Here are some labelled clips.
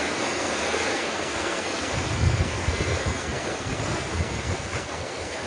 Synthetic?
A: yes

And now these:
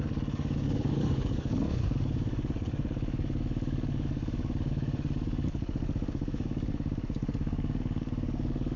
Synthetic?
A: yes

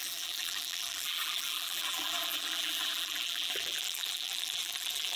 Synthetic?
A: yes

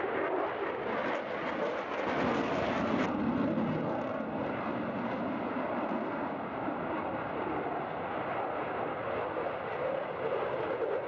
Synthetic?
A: no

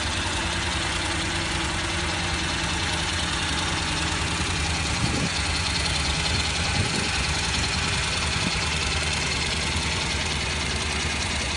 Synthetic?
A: yes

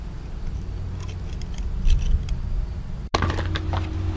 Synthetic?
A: no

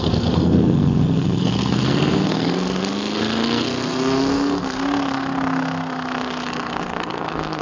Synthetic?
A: yes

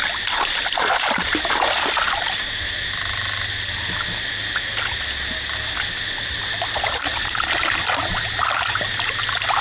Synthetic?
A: no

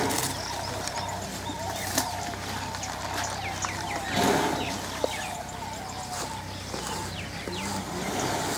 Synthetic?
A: no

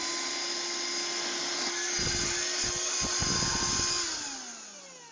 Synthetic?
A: no